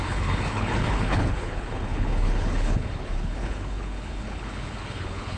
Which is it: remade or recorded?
remade